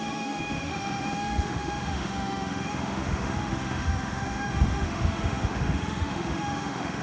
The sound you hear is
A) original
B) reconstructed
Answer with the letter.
B